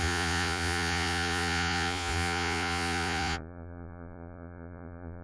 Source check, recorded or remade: remade